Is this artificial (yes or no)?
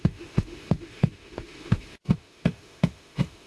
yes